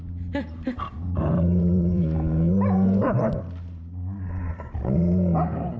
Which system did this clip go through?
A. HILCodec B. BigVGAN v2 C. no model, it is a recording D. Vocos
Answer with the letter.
B